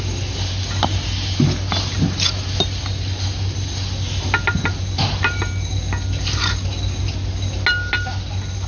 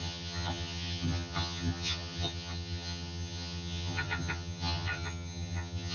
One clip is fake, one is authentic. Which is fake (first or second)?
second